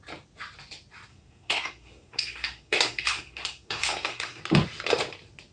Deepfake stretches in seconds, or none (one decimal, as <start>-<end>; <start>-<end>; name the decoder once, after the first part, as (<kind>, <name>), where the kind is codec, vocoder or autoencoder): 1.1-4.4 (codec, SNAC)